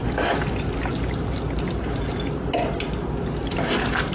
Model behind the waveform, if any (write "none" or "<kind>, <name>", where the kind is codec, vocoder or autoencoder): none